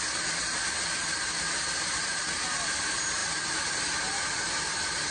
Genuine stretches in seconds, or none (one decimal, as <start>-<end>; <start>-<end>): 0.0-5.1